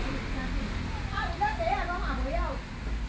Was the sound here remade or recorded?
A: recorded